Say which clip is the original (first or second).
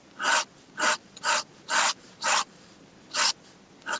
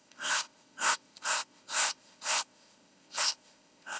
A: first